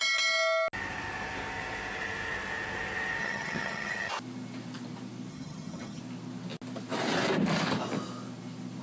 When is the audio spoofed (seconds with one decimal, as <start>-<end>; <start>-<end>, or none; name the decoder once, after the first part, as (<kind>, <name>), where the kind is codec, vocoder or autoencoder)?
3.2-4.1 (vocoder, HiFi-GAN); 5.3-6.0